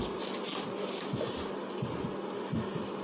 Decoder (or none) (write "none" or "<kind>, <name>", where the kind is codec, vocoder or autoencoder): none